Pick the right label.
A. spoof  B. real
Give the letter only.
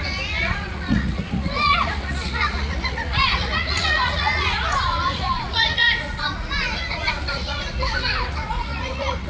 A